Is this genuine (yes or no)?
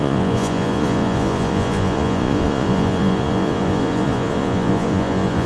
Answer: no